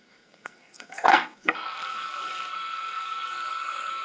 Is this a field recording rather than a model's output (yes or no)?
no